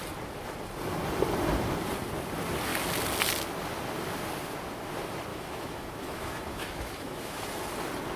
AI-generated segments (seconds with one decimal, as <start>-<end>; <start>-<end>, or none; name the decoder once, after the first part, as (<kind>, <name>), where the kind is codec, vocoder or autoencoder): 5.3-7.4 (autoencoder, DAC-VAE)